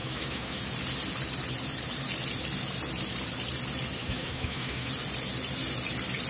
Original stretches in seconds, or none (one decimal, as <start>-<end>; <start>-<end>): 0.6-4.0; 4.9-6.3